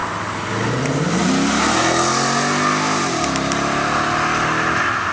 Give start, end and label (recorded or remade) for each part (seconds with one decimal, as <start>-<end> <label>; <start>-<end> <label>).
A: 0.0-5.1 recorded